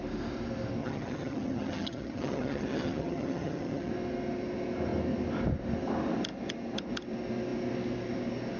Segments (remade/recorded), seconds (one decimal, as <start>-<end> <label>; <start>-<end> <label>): 0.0-0.8 recorded; 0.8-3.9 remade; 3.9-8.6 recorded